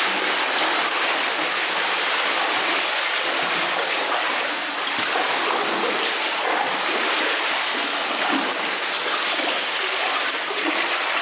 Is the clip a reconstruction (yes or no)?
no